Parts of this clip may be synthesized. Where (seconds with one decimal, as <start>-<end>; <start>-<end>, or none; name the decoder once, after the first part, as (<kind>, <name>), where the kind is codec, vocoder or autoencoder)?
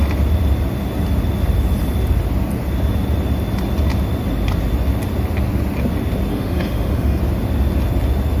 6.3-7.2 (autoencoder, DAC-VAE)